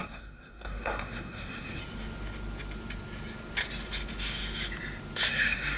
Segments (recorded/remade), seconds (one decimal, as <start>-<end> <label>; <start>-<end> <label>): 0.0-1.8 remade; 1.8-5.3 recorded; 5.3-5.8 remade